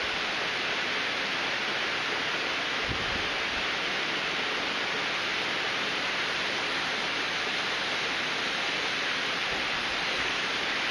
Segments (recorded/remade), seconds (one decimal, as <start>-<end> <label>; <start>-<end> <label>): 0.0-9.4 recorded; 9.4-10.5 remade; 10.5-10.9 recorded